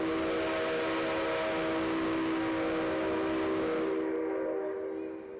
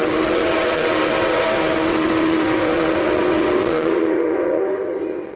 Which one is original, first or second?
first